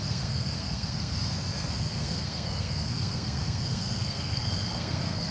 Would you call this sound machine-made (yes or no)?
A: yes